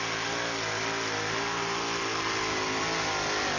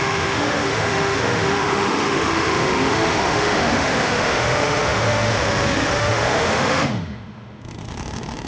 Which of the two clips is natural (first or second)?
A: first